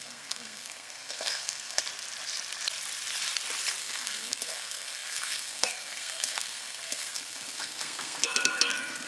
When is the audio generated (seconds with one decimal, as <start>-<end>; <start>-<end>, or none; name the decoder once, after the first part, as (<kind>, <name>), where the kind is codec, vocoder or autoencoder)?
0.0-1.8 (codec, SNAC); 3.8-9.1